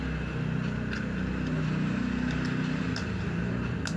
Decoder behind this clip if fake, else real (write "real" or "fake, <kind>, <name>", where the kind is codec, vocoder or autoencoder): real